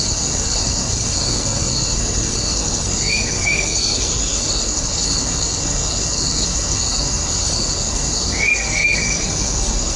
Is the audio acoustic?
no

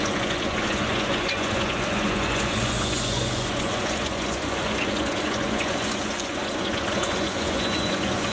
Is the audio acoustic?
no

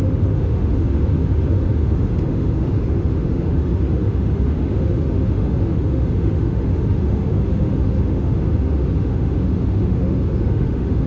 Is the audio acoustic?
no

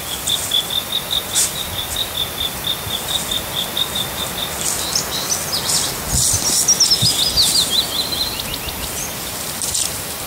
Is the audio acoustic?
yes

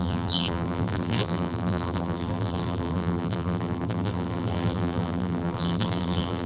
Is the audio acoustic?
no